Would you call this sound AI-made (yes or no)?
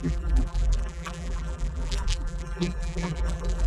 yes